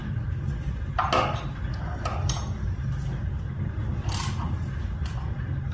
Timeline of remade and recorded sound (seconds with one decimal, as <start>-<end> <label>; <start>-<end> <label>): 0.0-5.7 recorded